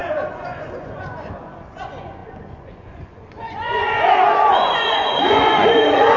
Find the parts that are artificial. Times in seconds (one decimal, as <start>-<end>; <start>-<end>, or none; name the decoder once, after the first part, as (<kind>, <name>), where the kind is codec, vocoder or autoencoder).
0.0-6.2 (vocoder, Vocos)